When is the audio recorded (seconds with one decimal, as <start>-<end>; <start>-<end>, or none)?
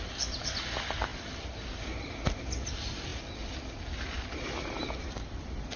0.0-5.8